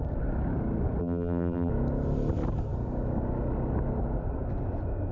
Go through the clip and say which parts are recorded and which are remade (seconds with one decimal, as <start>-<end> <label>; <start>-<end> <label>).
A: 0.0-1.0 recorded; 1.0-1.7 remade; 1.7-5.1 recorded

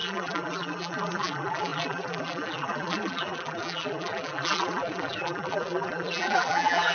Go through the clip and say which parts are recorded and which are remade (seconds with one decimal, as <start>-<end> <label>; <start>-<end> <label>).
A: 0.0-6.9 remade

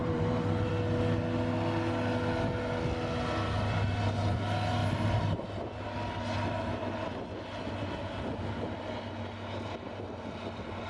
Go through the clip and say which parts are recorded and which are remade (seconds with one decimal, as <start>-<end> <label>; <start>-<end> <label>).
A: 0.0-0.7 remade; 0.7-4.8 recorded; 4.8-5.6 remade; 5.6-10.9 recorded

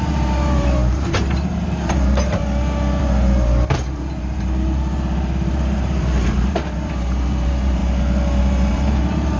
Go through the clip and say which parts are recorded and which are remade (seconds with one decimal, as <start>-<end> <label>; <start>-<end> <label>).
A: 0.0-2.4 remade; 2.4-3.0 recorded; 3.0-7.8 remade; 7.8-8.4 recorded; 8.4-9.4 remade

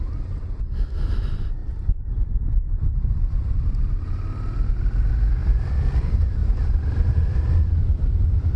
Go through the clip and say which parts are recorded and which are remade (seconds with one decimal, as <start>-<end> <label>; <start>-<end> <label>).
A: 0.0-5.4 recorded; 5.4-6.0 remade; 6.0-8.6 recorded

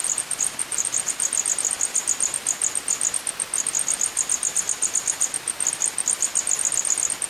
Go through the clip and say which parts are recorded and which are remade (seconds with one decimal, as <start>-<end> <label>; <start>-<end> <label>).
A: 0.0-1.1 remade; 1.1-7.3 recorded